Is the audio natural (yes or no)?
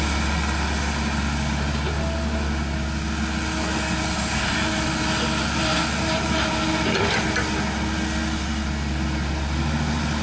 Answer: yes